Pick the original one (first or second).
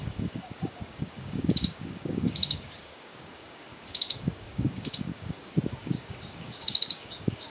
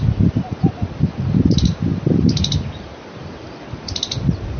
second